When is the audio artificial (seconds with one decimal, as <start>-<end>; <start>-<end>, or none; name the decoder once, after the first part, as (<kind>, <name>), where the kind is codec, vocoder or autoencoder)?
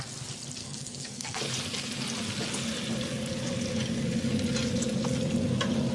0.6-1.4 (codec, SNAC)